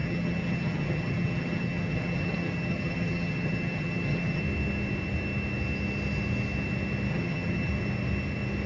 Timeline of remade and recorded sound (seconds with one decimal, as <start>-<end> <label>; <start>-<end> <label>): 0.0-4.4 remade; 4.4-7.1 recorded; 7.1-7.7 remade; 7.7-8.7 recorded